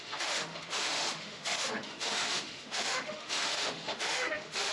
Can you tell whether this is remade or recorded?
remade